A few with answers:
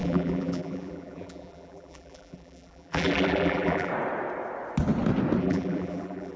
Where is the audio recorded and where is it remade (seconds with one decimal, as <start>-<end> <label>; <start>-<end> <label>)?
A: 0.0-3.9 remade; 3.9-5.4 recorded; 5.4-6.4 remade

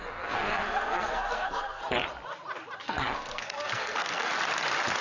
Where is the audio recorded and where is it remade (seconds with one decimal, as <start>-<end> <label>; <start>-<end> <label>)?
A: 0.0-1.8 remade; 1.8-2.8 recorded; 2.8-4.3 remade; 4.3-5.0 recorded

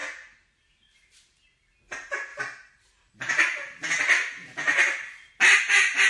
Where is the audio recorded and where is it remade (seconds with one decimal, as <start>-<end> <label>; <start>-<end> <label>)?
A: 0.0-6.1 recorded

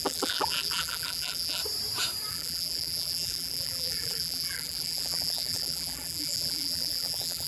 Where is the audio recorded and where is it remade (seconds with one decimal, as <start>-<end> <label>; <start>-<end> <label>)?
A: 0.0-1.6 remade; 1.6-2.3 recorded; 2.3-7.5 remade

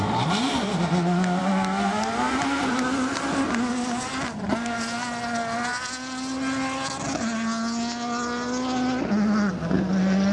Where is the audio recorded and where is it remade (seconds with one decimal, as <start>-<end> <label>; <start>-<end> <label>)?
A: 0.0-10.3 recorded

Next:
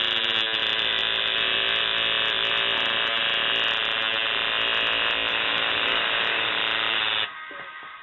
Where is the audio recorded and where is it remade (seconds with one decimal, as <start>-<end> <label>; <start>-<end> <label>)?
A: 0.0-5.3 recorded; 5.3-6.6 remade; 6.6-8.0 recorded